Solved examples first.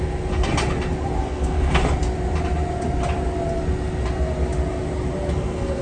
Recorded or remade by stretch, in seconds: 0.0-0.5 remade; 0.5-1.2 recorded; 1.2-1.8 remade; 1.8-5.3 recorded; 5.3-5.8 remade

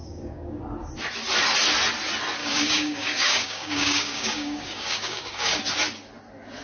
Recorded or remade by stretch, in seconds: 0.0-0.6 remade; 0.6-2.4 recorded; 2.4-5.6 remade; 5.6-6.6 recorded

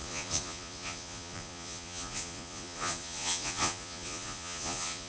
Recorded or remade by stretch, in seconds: 0.0-5.1 remade

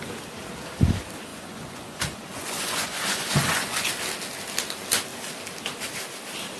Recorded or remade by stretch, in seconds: 0.0-1.3 recorded; 1.3-3.9 remade; 3.9-6.6 recorded

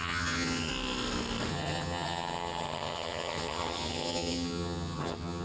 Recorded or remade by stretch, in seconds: 0.0-0.7 remade; 0.7-1.5 recorded; 1.5-5.4 remade

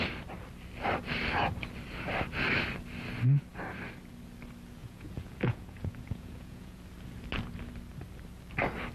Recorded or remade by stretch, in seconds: 0.0-4.8 recorded; 4.8-6.8 remade; 6.8-8.9 recorded

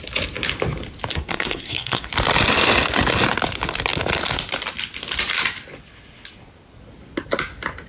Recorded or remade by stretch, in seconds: 0.0-1.1 recorded; 1.1-2.1 remade; 2.1-7.9 recorded